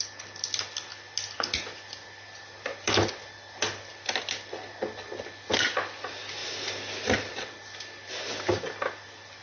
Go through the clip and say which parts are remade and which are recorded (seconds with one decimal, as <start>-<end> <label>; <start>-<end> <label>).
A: 0.0-9.4 recorded